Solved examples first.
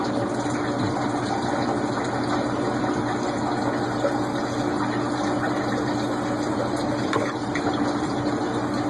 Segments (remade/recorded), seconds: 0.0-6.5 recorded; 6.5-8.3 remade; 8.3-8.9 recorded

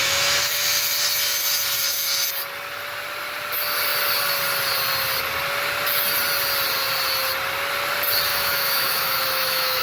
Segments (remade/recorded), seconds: 0.0-8.3 recorded; 8.3-9.8 remade

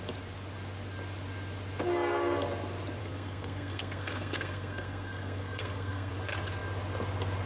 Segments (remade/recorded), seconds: 0.0-3.0 recorded; 3.0-6.1 remade; 6.1-7.5 recorded

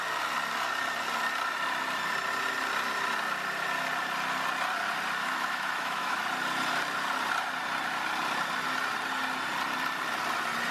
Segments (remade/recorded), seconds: 0.0-5.2 recorded; 5.2-6.3 remade; 6.3-10.7 recorded

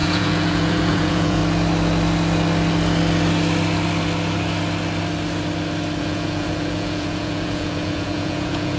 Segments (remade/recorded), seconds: 0.0-1.4 remade; 1.4-6.0 recorded; 6.0-8.8 remade

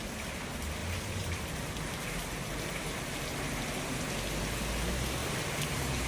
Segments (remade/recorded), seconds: 0.0-0.8 recorded; 0.8-3.2 remade; 3.2-5.2 recorded; 5.2-6.1 remade

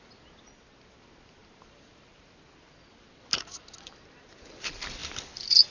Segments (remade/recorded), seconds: 0.0-5.7 recorded